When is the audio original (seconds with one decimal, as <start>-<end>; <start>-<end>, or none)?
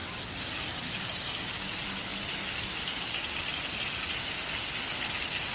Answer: 0.0-5.5